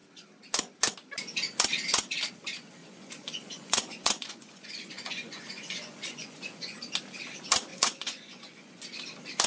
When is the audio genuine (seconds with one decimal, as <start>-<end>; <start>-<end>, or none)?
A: 0.0-2.8; 6.8-7.7; 8.8-9.5